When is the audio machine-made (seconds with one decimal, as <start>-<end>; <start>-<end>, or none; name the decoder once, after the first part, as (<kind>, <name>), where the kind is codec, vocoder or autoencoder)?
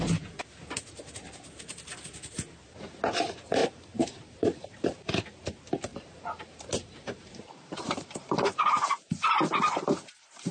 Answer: 3.6-5.0 (vocoder, BigVGAN v2); 5.9-9.5